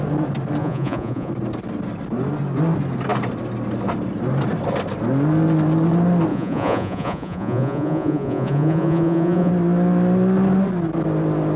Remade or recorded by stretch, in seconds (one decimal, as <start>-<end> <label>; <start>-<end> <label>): 0.0-0.6 recorded; 0.6-1.3 remade; 1.3-6.3 recorded; 6.3-9.5 remade; 9.5-11.6 recorded